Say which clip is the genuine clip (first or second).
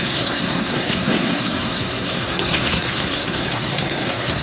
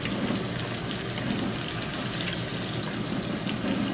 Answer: second